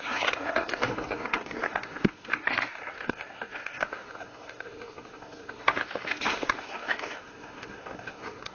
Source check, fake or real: fake